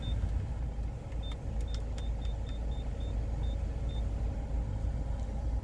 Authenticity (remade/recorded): recorded